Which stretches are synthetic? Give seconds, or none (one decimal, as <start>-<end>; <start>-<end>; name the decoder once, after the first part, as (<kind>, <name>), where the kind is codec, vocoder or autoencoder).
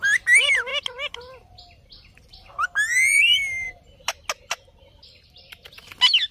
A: 3.2-3.8 (vocoder, BigVGAN v2)